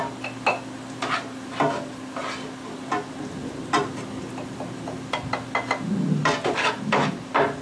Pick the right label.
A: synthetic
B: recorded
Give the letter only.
B